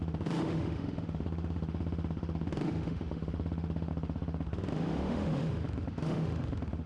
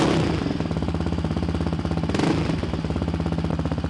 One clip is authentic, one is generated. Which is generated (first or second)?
first